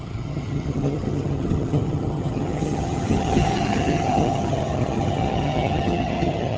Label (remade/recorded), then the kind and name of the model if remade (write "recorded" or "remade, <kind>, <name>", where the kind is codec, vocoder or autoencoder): remade, vocoder, HiFi-GAN